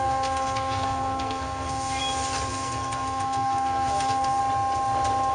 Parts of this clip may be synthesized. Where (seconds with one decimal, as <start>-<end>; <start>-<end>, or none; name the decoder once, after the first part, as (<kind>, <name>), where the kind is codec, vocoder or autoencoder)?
0.0-2.0 (codec, SNAC); 2.5-4.4